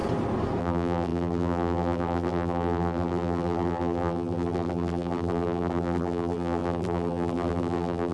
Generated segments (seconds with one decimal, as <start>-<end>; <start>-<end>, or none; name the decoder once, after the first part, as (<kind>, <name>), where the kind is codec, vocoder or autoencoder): 0.6-8.1 (vocoder, BigVGAN v2)